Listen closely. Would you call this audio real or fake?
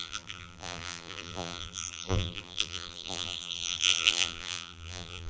fake